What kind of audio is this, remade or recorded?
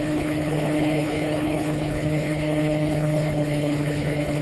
remade